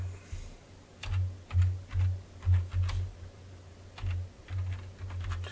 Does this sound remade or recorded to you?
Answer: recorded